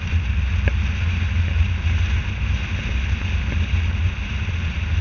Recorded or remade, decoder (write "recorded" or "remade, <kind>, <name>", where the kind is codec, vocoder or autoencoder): recorded